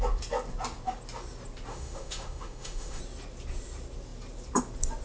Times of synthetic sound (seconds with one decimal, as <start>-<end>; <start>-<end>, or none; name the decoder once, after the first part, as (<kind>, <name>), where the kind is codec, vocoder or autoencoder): 1.7-3.0 (autoencoder, DAC-VAE)